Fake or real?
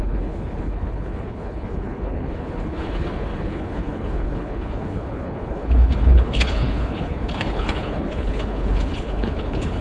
fake